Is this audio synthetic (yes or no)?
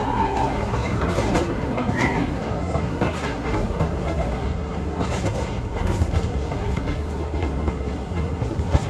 yes